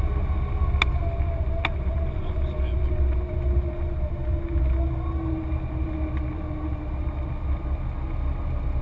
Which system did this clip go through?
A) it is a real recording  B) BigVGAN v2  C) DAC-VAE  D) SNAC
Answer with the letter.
A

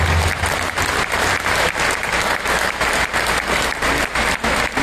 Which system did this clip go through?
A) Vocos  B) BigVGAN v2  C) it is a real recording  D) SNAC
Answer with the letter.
C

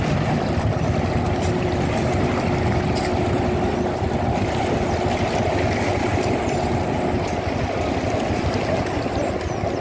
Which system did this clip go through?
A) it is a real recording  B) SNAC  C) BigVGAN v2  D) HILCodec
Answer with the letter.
A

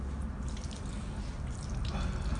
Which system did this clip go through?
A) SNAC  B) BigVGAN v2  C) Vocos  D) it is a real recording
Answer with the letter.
B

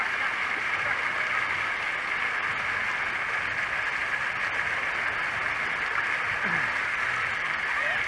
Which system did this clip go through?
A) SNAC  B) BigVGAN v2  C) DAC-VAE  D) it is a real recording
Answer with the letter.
D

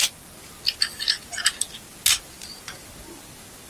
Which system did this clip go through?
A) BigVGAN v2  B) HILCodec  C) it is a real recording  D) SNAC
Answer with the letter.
C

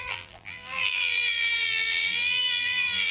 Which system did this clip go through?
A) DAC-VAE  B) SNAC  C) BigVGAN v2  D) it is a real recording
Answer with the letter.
C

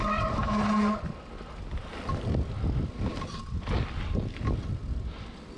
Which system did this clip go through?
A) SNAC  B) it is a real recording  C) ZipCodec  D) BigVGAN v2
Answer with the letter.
B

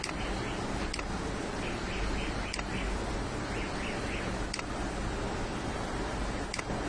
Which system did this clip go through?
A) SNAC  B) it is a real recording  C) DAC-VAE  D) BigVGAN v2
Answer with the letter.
B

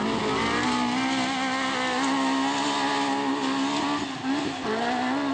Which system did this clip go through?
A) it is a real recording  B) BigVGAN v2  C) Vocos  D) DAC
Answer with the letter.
A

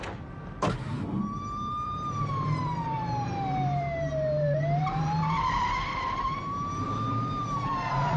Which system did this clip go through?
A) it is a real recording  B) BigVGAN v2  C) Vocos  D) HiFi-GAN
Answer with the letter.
B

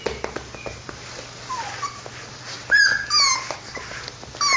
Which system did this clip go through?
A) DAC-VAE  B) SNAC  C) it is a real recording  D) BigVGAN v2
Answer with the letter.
C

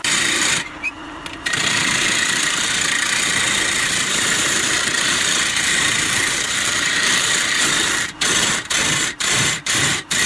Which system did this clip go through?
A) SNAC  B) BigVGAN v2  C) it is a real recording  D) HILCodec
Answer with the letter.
B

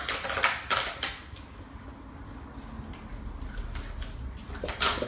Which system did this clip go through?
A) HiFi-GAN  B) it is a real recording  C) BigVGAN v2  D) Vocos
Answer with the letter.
B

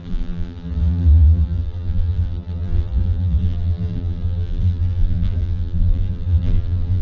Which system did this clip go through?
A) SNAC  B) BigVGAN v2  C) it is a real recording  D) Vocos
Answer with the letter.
B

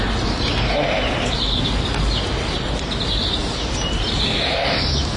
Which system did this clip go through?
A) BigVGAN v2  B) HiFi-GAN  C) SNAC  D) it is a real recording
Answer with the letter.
D